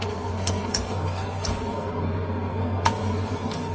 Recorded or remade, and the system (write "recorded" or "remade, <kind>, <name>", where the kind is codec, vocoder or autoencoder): remade, codec, SNAC